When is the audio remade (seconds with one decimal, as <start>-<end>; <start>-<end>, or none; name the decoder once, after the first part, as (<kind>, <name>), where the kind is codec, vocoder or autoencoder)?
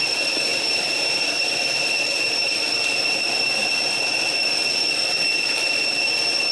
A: 0.5-1.3 (vocoder, BigVGAN v2)